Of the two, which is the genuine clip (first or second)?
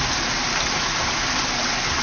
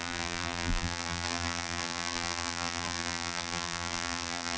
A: first